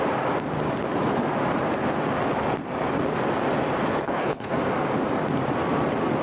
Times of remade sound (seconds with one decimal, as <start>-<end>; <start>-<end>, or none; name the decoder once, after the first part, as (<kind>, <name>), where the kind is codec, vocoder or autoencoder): 3.9-4.5 (codec, HILCodec)